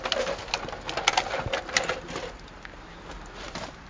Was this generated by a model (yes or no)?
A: no